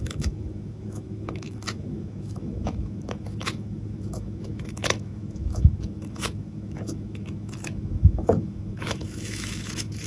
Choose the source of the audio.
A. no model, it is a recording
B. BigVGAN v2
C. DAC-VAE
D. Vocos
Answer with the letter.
C